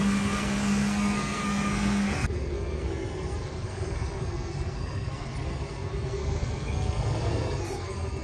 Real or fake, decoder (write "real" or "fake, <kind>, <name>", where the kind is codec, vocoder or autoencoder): fake, codec, SNAC